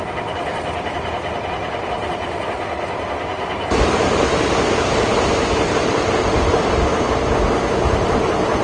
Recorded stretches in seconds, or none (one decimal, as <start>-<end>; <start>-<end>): 0.0-3.3; 5.8-8.6

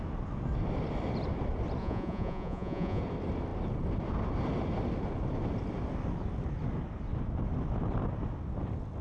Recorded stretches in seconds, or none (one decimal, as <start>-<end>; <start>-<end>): 0.0-1.8; 3.0-9.0

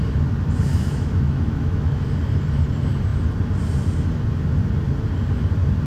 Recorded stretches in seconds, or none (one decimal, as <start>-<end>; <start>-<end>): 0.0-0.7; 2.0-5.9

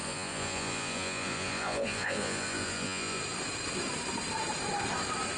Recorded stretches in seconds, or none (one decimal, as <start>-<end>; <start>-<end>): 3.2-5.4